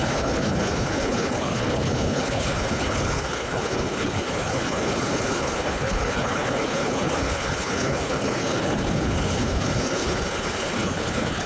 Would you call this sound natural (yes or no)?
no